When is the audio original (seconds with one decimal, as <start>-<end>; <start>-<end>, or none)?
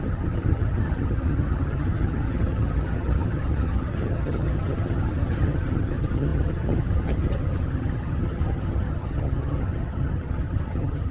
none